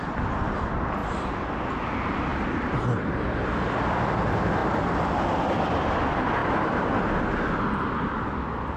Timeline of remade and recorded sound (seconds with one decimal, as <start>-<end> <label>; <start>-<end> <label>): 0.0-1.0 recorded; 1.0-1.6 remade; 1.6-2.3 recorded; 2.3-2.8 remade; 2.8-4.6 recorded; 4.6-5.6 remade; 5.6-8.8 recorded

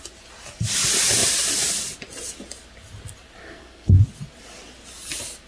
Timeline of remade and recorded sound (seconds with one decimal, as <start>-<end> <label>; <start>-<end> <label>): 0.0-3.4 recorded; 3.4-4.0 remade; 4.0-5.5 recorded

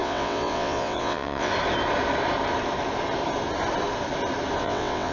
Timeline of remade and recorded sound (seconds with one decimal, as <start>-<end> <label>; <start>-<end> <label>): 0.0-1.5 remade; 1.5-4.6 recorded; 4.6-5.1 remade

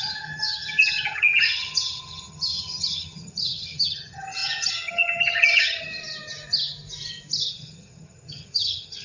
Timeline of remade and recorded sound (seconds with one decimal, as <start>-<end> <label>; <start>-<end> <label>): 0.0-6.0 remade; 6.0-7.5 recorded; 7.5-9.0 remade

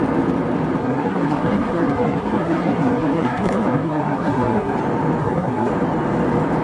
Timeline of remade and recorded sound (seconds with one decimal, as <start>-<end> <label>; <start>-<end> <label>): 0.0-0.8 recorded; 0.8-4.8 remade; 4.8-5.2 recorded; 5.2-5.7 remade; 5.7-6.6 recorded

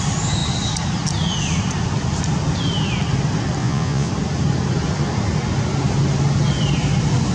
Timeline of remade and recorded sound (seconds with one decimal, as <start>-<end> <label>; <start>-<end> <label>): 0.0-3.6 recorded; 3.6-4.1 remade; 4.1-7.3 recorded

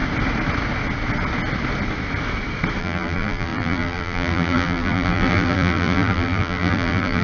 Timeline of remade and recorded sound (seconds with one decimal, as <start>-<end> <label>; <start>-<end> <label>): 0.0-2.8 recorded; 2.8-7.2 remade

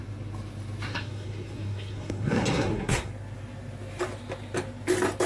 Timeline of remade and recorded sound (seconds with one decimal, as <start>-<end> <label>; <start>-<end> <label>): 0.0-0.9 recorded; 0.9-3.1 remade; 3.1-5.3 recorded